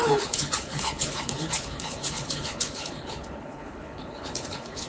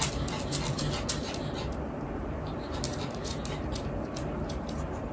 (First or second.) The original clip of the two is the second